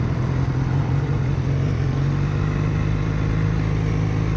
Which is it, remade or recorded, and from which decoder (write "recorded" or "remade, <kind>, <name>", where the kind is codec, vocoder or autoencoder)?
recorded